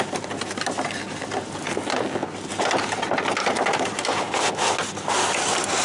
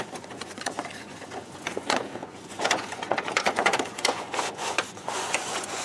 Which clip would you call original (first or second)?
first